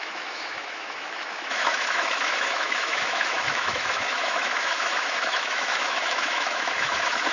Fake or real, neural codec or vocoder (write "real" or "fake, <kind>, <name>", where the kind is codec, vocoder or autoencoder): fake, autoencoder, DAC-VAE